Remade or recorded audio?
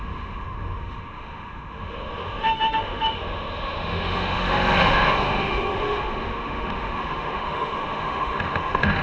remade